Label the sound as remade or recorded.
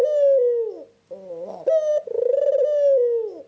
recorded